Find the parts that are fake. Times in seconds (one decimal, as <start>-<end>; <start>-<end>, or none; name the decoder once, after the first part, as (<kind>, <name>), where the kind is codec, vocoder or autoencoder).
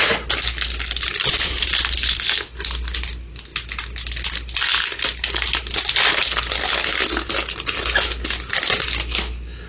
none